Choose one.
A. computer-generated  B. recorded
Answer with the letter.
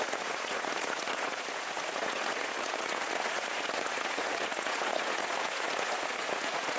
A